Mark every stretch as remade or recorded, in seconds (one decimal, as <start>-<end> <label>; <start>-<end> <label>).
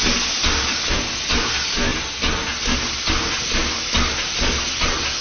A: 0.0-5.2 recorded